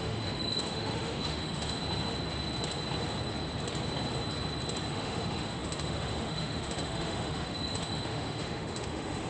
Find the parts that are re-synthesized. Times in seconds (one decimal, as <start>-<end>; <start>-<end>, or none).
0.0-1.8; 4.9-9.3